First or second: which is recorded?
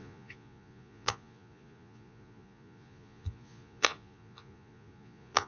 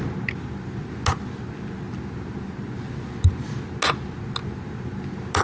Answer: second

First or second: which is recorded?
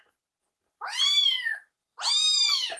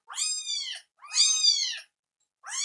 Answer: second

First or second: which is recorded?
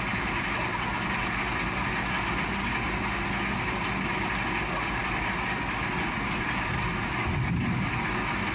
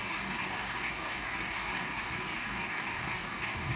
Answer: first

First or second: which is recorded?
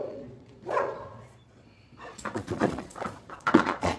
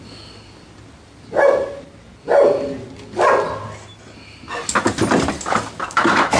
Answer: second